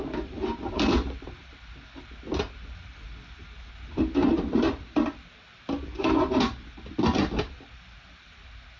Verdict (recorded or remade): recorded